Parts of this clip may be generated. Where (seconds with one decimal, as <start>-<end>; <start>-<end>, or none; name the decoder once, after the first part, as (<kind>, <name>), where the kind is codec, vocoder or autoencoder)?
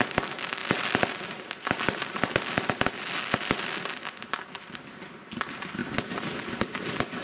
none